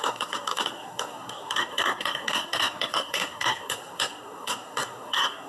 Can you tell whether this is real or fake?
fake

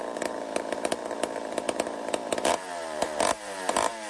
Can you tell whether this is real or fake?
fake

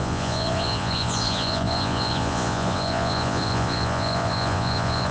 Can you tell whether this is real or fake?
fake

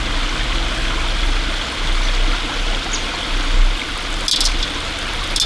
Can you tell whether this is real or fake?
real